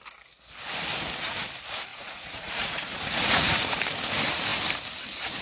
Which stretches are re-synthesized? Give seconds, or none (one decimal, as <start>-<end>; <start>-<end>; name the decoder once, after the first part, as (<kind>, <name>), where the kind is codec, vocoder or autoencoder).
1.9-3.8 (vocoder, Vocos)